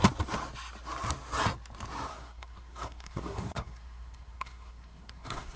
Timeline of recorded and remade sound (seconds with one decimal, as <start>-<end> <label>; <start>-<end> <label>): 0.0-2.1 recorded; 2.1-5.6 remade